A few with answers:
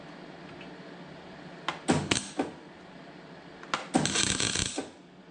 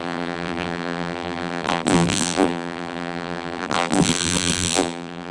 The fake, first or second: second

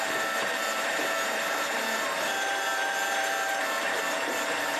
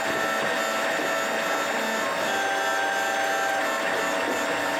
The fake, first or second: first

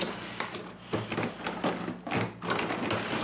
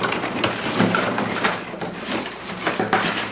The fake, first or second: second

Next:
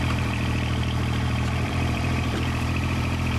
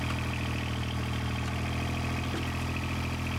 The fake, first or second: first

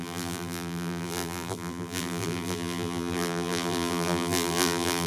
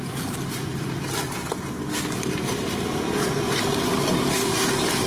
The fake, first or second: first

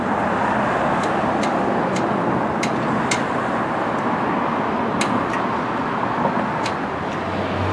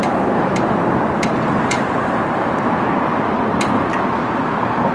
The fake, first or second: second